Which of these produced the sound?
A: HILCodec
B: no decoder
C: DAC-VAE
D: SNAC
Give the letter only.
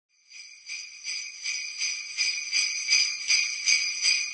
B